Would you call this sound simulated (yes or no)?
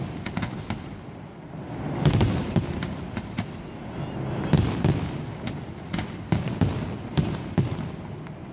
no